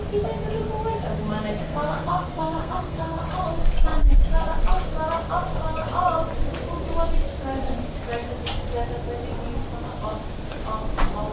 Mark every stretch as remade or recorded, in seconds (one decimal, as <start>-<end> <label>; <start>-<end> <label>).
0.0-1.6 recorded; 1.6-3.2 remade; 3.2-11.3 recorded